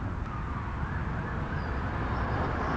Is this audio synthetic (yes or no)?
no